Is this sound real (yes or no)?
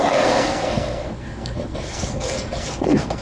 no